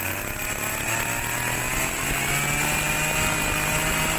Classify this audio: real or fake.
real